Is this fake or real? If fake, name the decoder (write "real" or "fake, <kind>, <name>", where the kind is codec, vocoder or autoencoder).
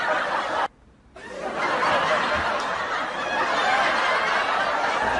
real